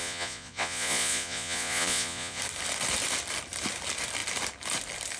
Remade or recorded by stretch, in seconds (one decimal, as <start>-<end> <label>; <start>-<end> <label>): 0.0-2.4 remade; 2.4-5.2 recorded